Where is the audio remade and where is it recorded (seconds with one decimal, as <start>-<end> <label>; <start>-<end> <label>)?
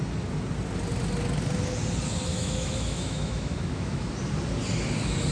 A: 0.0-2.3 recorded; 2.3-4.1 remade; 4.1-5.3 recorded